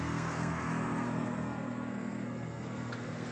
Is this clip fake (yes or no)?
yes